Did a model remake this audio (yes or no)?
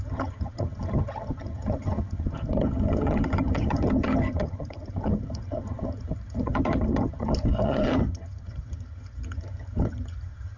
yes